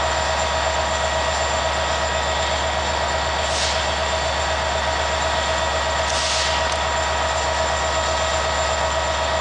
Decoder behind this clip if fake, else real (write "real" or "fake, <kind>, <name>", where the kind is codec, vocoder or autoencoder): real